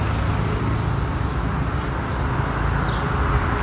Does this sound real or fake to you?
real